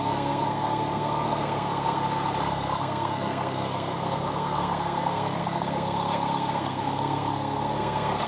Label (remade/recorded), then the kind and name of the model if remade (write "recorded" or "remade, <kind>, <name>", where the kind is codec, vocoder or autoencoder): remade, codec, SNAC